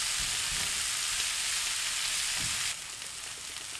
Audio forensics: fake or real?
real